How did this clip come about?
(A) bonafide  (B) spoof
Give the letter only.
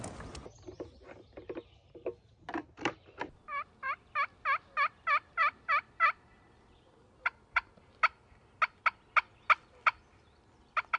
A